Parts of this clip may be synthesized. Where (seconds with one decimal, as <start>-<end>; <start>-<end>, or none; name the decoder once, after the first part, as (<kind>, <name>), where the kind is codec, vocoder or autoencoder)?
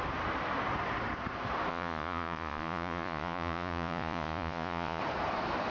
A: 1.7-5.0 (vocoder, Vocos)